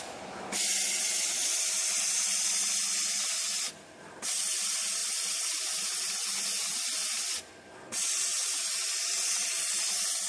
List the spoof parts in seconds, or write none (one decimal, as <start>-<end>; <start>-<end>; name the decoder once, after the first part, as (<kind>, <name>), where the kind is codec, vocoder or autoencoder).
none